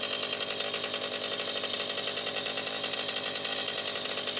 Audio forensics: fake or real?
real